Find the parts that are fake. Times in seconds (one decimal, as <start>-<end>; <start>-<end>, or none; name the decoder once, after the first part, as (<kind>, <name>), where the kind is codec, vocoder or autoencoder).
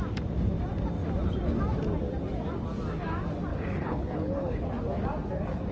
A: 3.5-4.6 (codec, HILCodec)